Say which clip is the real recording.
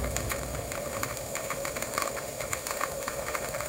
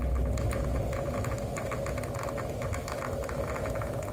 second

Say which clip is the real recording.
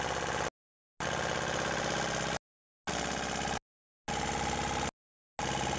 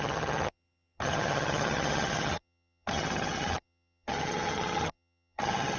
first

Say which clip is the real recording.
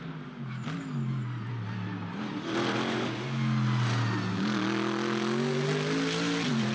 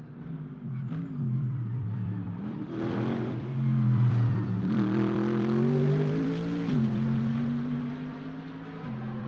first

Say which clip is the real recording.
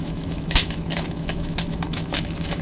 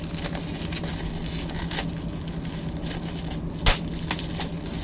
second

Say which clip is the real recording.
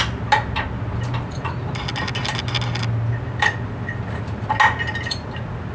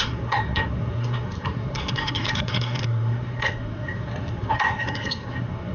first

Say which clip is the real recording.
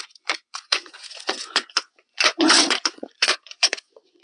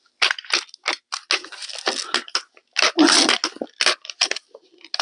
second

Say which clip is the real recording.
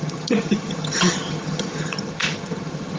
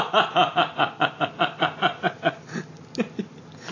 second